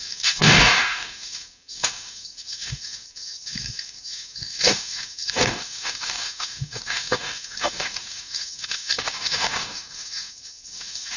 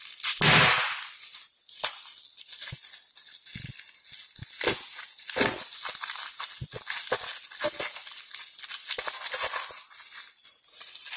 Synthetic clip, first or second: first